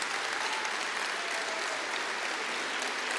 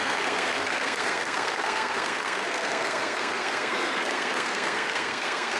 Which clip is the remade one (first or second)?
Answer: second